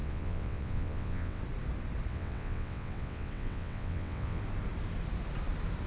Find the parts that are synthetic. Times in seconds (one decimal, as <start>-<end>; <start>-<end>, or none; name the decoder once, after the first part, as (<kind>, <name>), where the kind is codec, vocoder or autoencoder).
0.0-1.4 (vocoder, WaveNeXt); 2.1-4.4